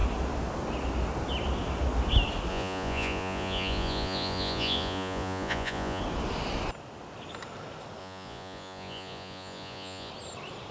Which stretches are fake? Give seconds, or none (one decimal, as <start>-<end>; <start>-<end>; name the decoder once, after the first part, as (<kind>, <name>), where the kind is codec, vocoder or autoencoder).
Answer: 2.5-6.0 (vocoder, Vocos); 8.0-10.1